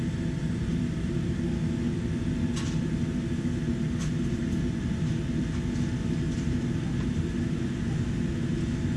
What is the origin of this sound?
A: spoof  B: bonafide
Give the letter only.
B